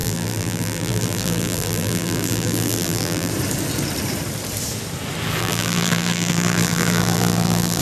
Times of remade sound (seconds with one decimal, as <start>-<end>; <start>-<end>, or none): 0.0-3.3; 5.4-7.8